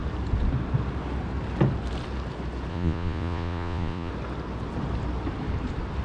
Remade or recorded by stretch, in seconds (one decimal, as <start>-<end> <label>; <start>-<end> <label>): 0.0-2.7 recorded; 2.7-4.1 remade; 4.1-6.0 recorded